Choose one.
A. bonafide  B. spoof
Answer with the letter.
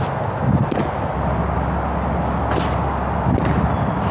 A